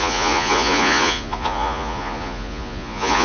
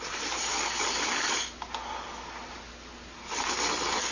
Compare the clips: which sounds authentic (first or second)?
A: second